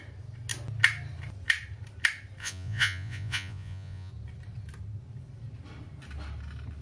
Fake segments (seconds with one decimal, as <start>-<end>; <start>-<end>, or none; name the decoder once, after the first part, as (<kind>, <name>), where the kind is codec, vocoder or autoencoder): 2.4-4.1 (vocoder, Vocos)